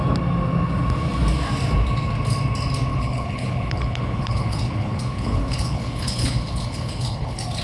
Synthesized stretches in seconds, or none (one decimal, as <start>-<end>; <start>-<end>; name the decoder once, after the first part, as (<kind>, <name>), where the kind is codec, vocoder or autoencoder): 2.9-7.6 (codec, HILCodec)

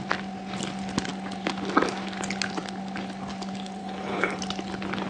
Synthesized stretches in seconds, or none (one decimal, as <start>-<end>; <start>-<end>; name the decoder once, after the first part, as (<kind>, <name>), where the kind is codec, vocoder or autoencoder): 3.8-4.4 (codec, HILCodec)